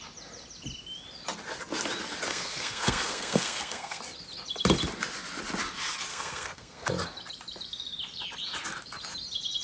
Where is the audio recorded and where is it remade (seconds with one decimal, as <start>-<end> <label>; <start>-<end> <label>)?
0.0-2.3 recorded; 2.3-4.0 remade; 4.0-6.1 recorded; 6.1-6.9 remade; 6.9-9.6 recorded